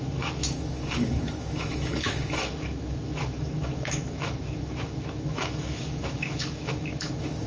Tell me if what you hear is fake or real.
fake